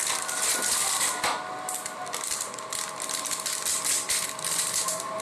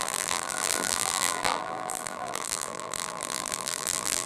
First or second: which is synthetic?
second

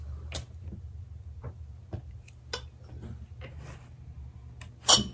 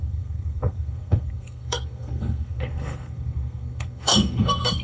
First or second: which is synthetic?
second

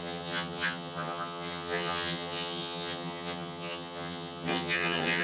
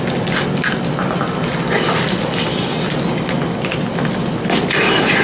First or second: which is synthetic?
first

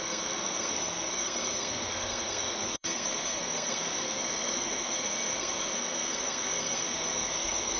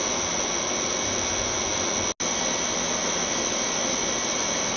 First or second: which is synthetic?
first